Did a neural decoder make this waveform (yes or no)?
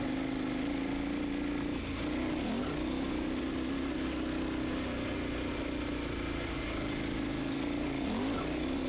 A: no